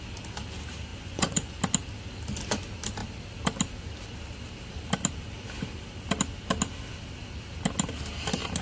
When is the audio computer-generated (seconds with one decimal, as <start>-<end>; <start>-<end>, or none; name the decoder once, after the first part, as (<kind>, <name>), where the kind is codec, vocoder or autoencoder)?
0.9-1.6 (vocoder, Vocos)

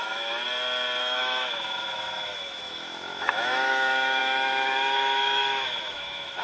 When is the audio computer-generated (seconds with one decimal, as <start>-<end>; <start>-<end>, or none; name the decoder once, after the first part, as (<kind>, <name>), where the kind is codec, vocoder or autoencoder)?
0.0-0.4 (autoencoder, DAC-VAE); 1.0-6.4